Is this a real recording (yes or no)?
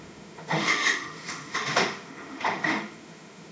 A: no